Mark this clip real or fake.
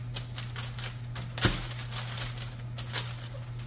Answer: real